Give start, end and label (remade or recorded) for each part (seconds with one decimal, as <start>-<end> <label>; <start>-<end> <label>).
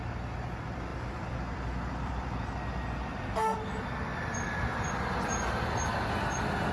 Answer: 0.0-0.9 recorded; 0.9-3.2 remade; 3.2-6.7 recorded